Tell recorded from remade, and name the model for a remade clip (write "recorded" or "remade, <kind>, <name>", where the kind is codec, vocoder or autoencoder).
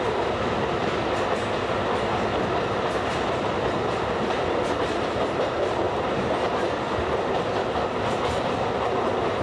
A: recorded